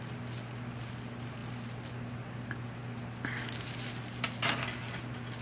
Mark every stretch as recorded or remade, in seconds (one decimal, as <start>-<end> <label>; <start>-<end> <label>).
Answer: 0.0-5.4 recorded